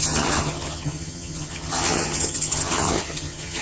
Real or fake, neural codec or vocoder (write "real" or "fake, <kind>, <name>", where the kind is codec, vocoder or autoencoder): fake, vocoder, HiFi-GAN